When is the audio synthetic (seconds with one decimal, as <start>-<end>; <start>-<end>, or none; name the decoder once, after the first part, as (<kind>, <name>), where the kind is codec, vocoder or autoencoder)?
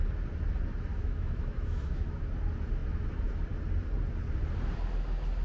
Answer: 0.9-2.3 (autoencoder, DAC-VAE)